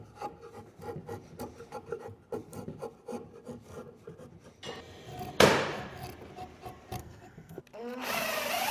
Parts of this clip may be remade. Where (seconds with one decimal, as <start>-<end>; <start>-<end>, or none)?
7.0-7.6